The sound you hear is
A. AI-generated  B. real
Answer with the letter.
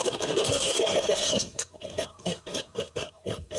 A